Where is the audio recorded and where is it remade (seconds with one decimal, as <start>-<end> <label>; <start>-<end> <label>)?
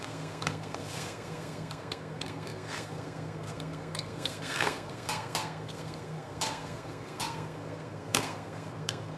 0.0-9.2 remade